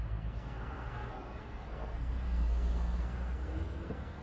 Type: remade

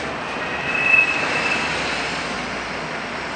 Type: recorded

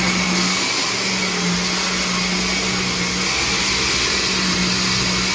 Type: recorded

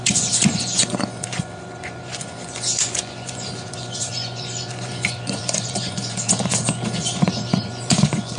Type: remade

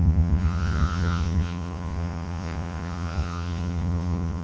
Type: remade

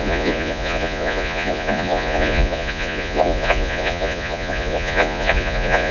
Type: remade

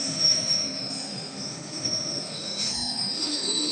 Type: remade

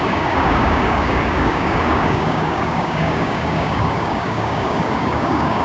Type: remade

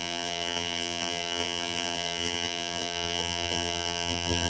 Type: remade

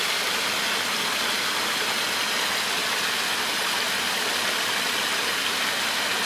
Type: recorded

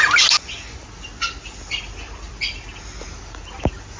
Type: recorded